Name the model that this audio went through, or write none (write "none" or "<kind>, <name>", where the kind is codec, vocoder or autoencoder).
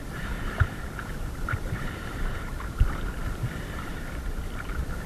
none